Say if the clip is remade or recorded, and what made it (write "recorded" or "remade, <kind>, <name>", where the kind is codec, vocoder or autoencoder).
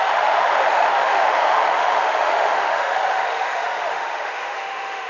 remade, autoencoder, DAC-VAE